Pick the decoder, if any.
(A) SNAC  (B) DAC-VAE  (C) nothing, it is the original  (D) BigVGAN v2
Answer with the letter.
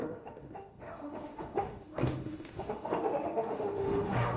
B